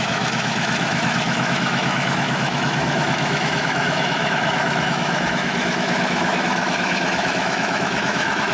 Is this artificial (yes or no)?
yes